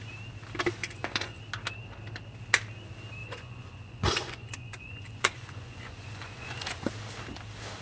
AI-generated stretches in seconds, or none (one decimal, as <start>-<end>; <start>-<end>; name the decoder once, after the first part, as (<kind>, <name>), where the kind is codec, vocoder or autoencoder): 0.8-1.4 (vocoder, Vocos); 3.2-6.9